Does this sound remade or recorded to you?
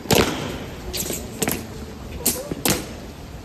recorded